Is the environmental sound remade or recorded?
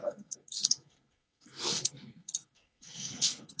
remade